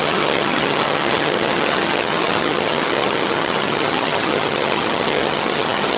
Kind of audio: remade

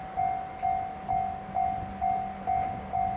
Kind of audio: recorded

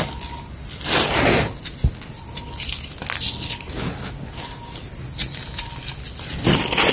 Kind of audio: recorded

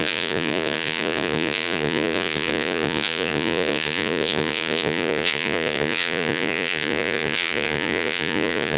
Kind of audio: remade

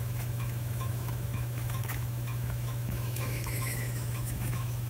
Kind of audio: remade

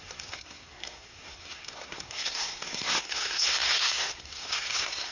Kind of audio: remade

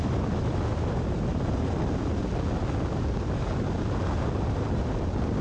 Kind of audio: recorded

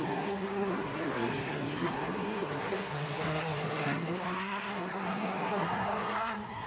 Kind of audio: remade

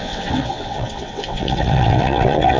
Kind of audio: remade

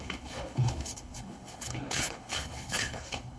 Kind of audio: remade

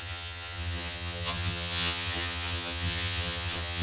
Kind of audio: remade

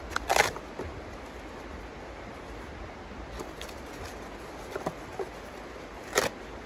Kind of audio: recorded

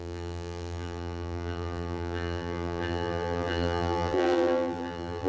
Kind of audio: remade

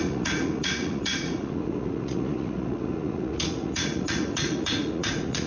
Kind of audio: remade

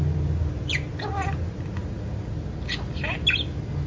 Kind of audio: recorded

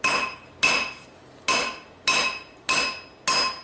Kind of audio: recorded